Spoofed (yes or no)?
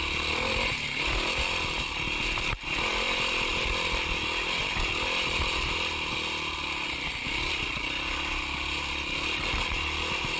no